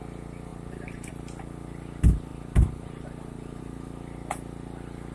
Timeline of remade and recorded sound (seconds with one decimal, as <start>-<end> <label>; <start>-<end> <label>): 0.0-0.5 recorded; 0.5-1.1 remade; 1.1-2.3 recorded; 2.3-3.6 remade; 3.6-5.1 recorded